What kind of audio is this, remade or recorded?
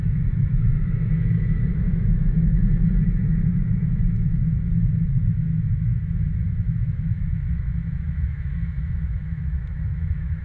remade